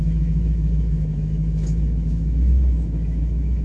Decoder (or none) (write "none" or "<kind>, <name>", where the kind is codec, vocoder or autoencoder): autoencoder, DAC-VAE